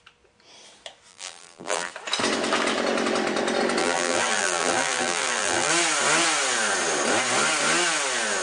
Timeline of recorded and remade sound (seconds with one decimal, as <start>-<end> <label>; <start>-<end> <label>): 0.0-1.1 recorded; 1.1-1.9 remade; 1.9-3.8 recorded; 3.8-5.7 remade; 5.7-8.4 recorded